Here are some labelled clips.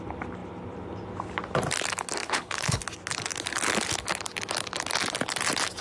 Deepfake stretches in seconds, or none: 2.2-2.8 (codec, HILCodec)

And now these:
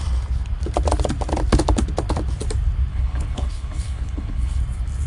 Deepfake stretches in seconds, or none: 2.9-4.6 (codec, HILCodec)

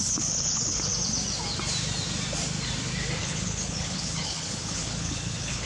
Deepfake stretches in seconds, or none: 0.0-0.9 (codec, HILCodec); 3.2-5.7

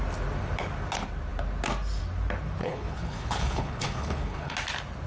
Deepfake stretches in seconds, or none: 2.6-4.5 (codec, HILCodec)

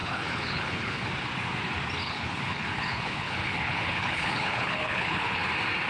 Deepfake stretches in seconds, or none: 0.0-1.1 (codec, HILCodec); 2.0-5.5

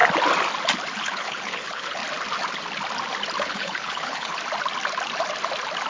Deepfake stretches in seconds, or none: 1.0-2.0 (codec, HILCodec); 3.4-4.3